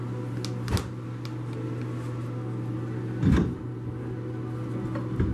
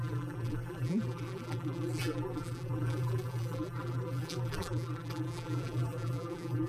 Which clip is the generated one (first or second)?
second